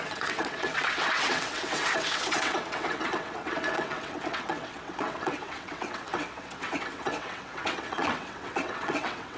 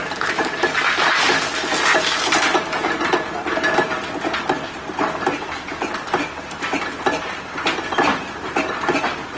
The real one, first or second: second